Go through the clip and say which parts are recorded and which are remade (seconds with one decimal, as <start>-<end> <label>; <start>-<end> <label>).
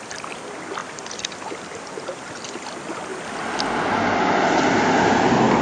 0.0-0.8 recorded; 0.8-2.6 remade; 2.6-5.6 recorded